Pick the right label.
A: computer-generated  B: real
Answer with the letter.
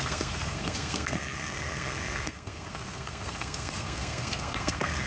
A